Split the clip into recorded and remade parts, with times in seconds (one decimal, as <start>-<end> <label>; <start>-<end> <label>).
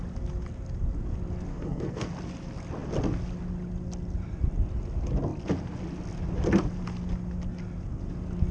0.0-1.5 recorded; 1.5-2.1 remade; 2.1-8.5 recorded